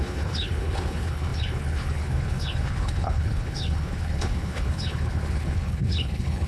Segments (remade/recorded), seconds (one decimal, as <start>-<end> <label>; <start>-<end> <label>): 0.0-6.5 remade